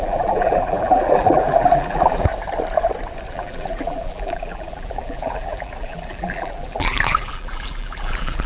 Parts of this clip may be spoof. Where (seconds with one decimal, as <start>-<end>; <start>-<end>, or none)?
0.0-2.3; 3.3-8.5